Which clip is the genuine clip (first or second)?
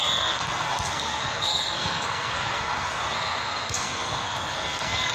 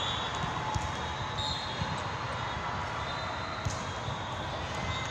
second